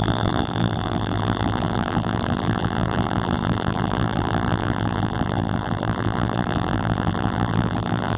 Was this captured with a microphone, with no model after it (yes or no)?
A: no